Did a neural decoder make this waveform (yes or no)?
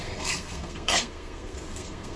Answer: yes